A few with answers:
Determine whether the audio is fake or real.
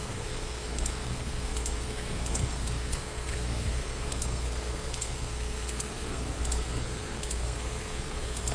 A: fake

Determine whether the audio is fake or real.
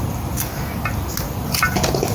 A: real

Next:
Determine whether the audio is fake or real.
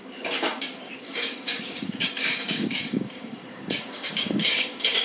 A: fake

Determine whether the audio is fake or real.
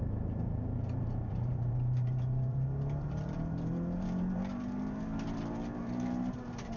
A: fake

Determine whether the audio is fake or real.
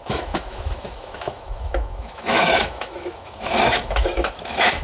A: fake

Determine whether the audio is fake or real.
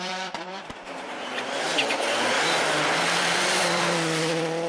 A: fake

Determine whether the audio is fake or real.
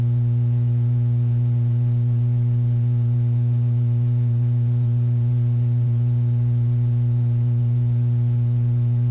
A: fake